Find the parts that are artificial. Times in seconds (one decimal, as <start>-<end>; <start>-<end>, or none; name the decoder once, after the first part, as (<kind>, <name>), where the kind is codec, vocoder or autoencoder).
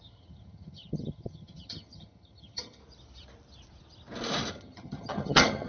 0.0-2.8 (vocoder, HiFi-GAN); 4.5-5.7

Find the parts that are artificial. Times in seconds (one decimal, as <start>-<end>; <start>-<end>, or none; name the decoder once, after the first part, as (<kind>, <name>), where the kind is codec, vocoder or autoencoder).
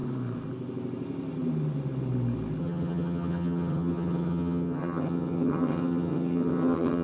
2.6-7.0 (vocoder, HiFi-GAN)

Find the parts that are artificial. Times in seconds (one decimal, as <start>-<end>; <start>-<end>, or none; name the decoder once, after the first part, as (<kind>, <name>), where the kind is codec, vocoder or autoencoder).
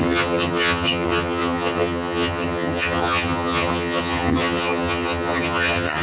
0.0-6.0 (vocoder, HiFi-GAN)